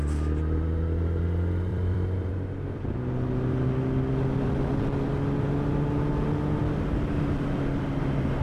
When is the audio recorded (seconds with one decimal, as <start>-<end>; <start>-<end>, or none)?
0.0-1.7; 2.3-8.4